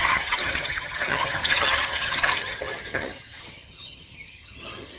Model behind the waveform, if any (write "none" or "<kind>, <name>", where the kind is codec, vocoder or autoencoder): vocoder, HiFi-GAN